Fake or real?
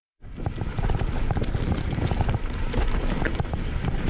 real